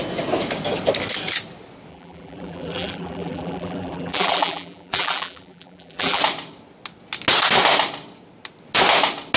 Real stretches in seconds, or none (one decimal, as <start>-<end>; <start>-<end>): 0.0-1.9; 6.2-9.4